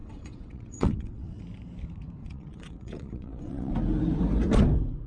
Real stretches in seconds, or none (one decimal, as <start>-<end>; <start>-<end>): 1.4-2.2; 3.7-5.1